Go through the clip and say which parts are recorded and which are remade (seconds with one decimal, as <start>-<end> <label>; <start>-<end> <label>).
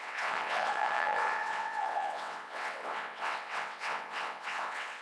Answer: 0.0-5.0 remade